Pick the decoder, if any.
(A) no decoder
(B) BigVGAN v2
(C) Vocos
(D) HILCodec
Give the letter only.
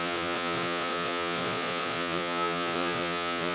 C